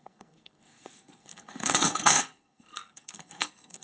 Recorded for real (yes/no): no